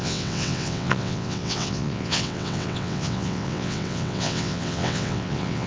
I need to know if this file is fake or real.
fake